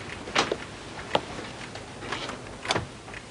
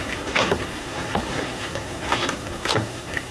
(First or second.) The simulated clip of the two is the second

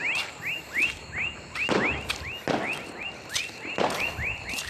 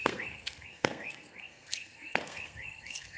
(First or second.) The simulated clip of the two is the second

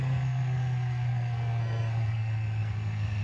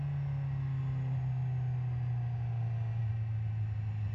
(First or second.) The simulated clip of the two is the first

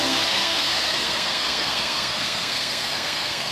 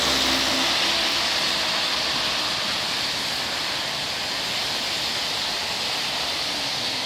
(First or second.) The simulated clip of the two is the first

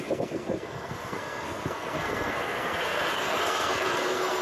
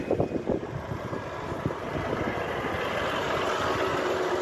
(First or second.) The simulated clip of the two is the first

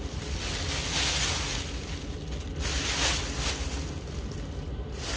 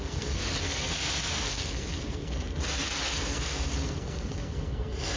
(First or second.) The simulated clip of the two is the second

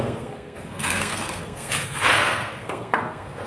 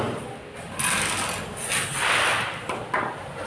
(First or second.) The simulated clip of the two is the first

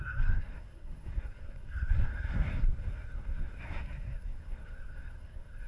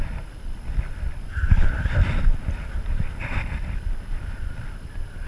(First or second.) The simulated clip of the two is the first